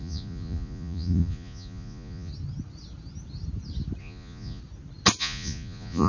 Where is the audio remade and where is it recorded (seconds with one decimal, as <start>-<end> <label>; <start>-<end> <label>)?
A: 0.0-2.3 remade; 2.3-4.0 recorded; 4.0-4.6 remade; 4.6-5.2 recorded; 5.2-6.1 remade